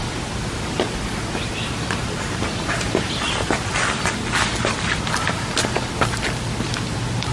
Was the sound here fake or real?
real